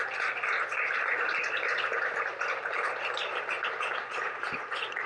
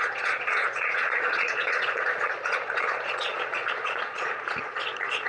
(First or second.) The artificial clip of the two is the second